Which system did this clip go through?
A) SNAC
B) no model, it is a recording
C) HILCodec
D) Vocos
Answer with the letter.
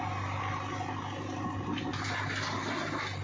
B